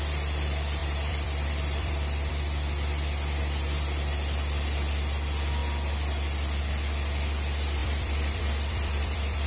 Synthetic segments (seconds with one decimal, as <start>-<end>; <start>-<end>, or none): 0.8-2.3; 7.8-9.5